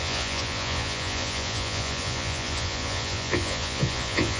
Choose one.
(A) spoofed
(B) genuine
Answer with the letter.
A